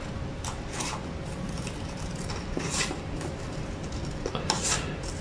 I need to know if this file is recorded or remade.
recorded